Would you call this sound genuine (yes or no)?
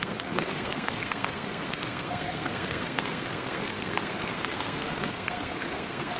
no